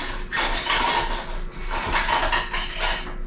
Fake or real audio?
real